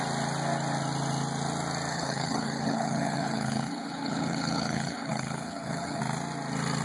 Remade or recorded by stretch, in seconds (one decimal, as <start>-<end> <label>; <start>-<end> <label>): 0.0-1.9 recorded; 1.9-6.0 remade; 6.0-6.8 recorded